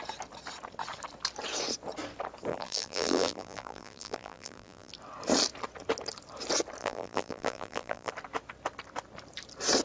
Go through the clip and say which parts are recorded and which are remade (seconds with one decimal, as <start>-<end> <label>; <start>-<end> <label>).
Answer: 0.0-2.5 recorded; 2.5-4.9 remade; 4.9-6.8 recorded; 6.8-8.1 remade; 8.1-9.8 recorded